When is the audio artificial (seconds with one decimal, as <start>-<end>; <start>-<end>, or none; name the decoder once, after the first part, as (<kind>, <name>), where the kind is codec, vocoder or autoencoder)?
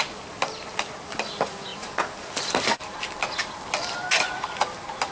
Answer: none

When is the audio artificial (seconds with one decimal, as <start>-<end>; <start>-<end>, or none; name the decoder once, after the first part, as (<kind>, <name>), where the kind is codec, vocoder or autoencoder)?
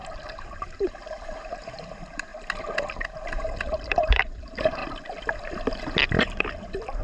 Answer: 0.0-2.3 (vocoder, BigVGAN v2); 2.9-4.8; 6.2-7.0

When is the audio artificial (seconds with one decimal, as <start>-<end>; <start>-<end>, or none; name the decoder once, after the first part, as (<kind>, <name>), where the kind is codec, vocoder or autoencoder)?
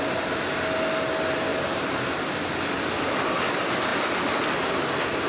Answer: 1.5-2.6 (vocoder, BigVGAN v2)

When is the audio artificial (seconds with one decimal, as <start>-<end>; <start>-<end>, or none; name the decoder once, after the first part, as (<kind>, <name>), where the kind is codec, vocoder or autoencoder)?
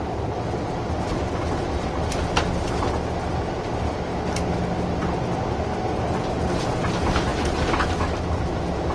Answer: none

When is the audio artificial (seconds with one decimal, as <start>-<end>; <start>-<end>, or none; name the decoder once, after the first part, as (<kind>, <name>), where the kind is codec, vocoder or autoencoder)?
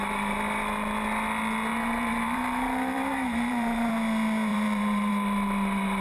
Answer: 1.7-3.9 (vocoder, BigVGAN v2); 4.5-5.1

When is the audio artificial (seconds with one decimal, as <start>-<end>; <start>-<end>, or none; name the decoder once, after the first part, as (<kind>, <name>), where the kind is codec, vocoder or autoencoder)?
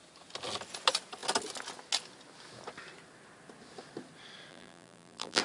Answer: 4.5-5.4 (vocoder, BigVGAN v2)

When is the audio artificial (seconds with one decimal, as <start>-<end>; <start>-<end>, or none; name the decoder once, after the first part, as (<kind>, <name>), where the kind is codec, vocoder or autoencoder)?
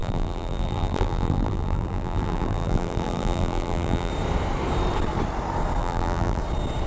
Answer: 0.0-4.1 (vocoder, BigVGAN v2); 5.8-6.4